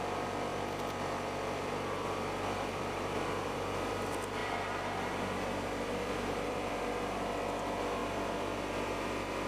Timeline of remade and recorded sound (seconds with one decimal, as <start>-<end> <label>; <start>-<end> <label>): 0.0-0.5 recorded; 0.5-3.9 remade; 3.9-4.4 recorded; 4.4-6.7 remade; 6.7-8.0 recorded; 8.0-9.5 remade